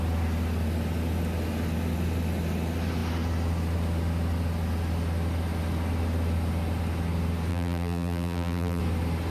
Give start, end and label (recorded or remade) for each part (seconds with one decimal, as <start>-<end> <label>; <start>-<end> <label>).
0.0-7.5 recorded; 7.5-8.8 remade; 8.8-9.3 recorded